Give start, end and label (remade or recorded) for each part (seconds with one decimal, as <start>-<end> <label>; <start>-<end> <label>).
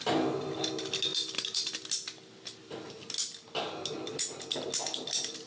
0.0-5.5 recorded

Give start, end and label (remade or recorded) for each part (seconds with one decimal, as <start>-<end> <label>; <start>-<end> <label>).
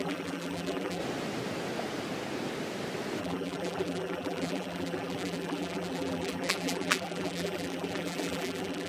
0.0-1.0 remade; 1.0-3.2 recorded; 3.2-8.9 remade